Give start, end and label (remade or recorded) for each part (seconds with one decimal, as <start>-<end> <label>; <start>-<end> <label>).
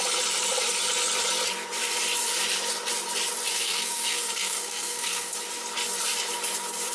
0.0-3.5 recorded; 3.5-5.4 remade; 5.4-6.9 recorded